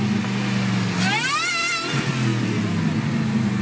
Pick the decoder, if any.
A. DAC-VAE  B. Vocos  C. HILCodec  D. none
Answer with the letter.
D